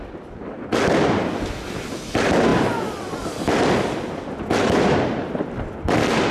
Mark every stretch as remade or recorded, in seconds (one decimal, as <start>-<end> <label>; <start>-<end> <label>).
0.0-6.3 recorded